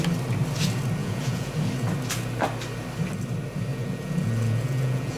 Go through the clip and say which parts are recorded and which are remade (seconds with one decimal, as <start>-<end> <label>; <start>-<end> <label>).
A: 0.0-1.0 recorded; 1.0-1.5 remade; 1.5-3.7 recorded; 3.7-5.2 remade